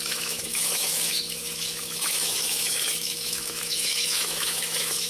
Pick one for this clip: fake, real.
fake